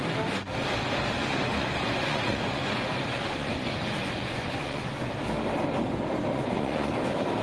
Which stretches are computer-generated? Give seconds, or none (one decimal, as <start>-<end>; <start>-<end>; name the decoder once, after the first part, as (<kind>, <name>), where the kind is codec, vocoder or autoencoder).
1.2-5.1 (vocoder, Vocos); 6.3-7.0